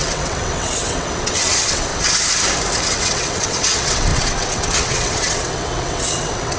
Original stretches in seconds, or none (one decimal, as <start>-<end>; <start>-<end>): 1.9-2.8